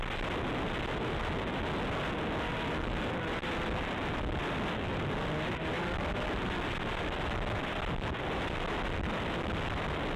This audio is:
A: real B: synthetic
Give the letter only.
A